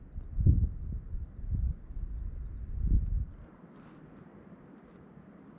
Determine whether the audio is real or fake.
real